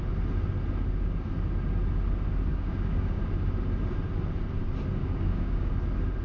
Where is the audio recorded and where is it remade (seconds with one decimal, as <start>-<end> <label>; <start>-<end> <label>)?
0.0-2.5 recorded; 2.5-3.2 remade; 3.2-5.0 recorded; 5.0-5.7 remade; 5.7-6.2 recorded